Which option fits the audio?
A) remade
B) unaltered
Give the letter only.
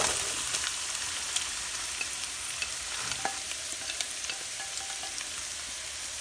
B